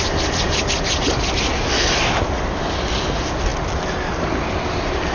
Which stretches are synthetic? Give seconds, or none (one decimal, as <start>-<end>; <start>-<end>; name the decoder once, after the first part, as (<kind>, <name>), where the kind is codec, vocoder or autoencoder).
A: none